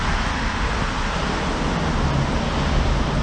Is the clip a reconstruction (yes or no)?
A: no